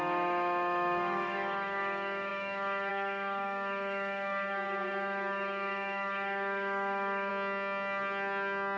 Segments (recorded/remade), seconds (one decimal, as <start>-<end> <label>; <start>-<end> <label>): 0.0-7.3 remade; 7.3-8.8 recorded